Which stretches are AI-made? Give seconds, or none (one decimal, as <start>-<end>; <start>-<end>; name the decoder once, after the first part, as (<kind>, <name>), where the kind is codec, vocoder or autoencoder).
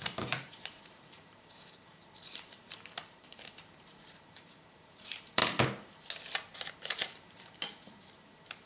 0.0-5.4 (vocoder, BigVGAN v2); 6.7-8.7